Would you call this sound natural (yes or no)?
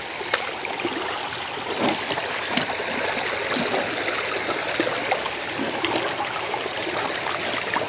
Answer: yes